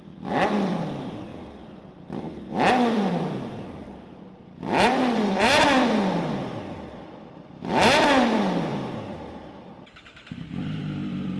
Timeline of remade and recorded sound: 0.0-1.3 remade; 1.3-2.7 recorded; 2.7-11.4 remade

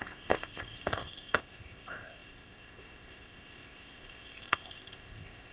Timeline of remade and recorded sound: 0.0-5.5 remade